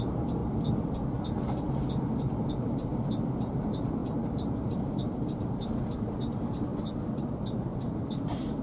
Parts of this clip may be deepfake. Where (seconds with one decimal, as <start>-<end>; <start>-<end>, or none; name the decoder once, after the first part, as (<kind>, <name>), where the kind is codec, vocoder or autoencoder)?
0.0-0.4 (vocoder, BigVGAN v2); 2.5-6.7; 7.2-8.6